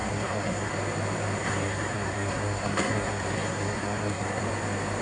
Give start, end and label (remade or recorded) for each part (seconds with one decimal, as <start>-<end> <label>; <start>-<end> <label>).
0.0-0.7 remade; 0.7-1.4 recorded; 1.4-4.4 remade; 4.4-5.0 recorded